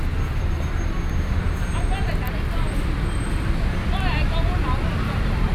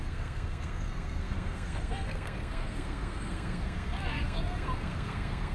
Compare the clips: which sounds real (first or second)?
first